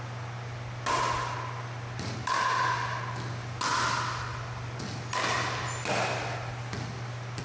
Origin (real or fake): real